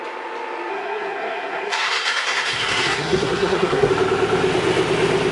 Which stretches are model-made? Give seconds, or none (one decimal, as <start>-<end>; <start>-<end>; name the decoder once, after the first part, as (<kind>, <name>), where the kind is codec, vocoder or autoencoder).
0.7-3.9 (codec, SNAC)